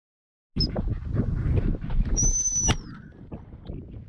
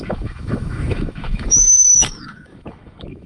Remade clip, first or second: second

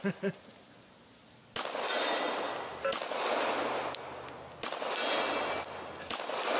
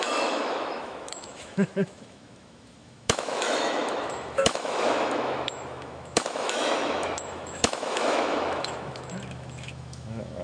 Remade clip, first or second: second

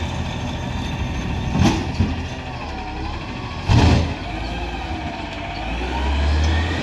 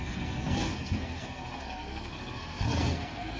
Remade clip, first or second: second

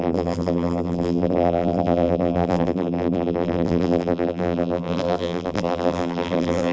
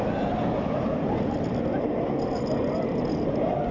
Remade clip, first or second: first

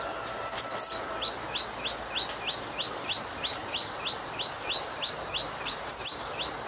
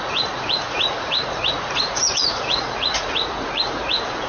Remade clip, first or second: second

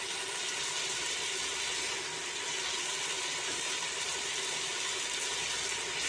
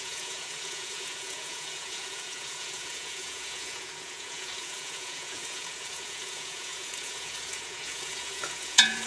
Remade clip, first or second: second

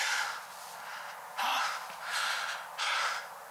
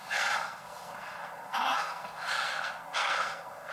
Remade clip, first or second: second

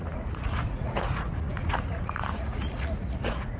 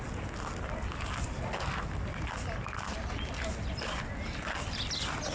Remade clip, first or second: first